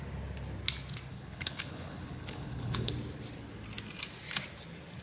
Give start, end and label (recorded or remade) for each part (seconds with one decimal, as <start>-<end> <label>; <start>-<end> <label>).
0.0-1.1 recorded; 1.1-2.9 remade; 2.9-5.0 recorded